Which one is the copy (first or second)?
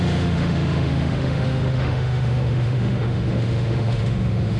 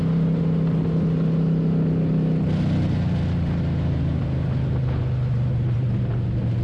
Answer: first